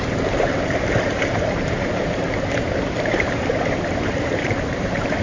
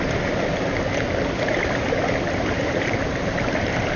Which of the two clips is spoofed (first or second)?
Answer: first